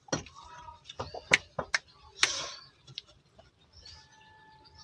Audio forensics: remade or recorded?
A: recorded